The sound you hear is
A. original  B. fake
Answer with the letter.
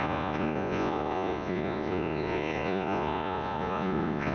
B